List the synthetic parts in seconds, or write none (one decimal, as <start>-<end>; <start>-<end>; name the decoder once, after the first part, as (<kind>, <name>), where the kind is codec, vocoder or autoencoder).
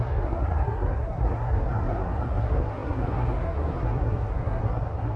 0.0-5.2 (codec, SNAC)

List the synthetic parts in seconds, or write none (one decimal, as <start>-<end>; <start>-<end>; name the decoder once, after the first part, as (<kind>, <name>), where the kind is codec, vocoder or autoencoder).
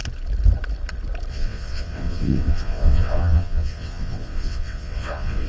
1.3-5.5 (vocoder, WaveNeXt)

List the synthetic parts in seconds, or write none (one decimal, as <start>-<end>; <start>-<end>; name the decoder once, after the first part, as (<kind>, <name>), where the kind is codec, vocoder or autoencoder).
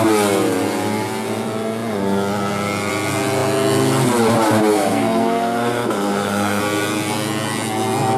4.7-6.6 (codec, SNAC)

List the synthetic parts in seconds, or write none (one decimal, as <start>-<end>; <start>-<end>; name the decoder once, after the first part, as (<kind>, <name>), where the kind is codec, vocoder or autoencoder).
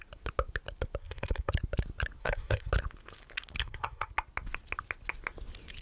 1.0-1.5 (codec, SNAC); 2.2-2.7; 3.6-4.1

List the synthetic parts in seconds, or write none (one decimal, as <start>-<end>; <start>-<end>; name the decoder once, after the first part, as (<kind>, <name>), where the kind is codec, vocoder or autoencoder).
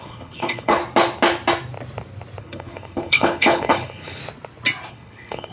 0.0-0.8 (codec, HILCodec); 2.4-4.2; 4.9-5.5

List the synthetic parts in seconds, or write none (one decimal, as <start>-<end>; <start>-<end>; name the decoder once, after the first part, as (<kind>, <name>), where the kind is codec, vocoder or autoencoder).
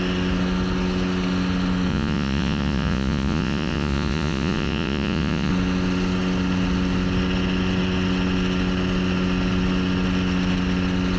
1.9-5.5 (vocoder, Vocos)